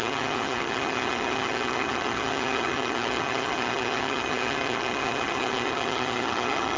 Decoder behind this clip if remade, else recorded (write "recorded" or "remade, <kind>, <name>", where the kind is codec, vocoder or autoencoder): remade, vocoder, HiFi-GAN